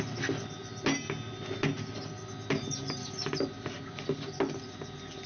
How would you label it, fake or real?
real